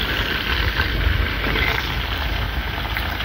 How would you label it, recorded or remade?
recorded